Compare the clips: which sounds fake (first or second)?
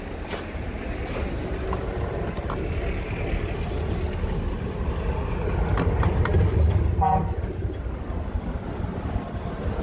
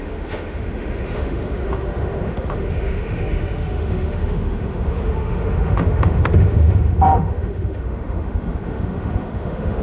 second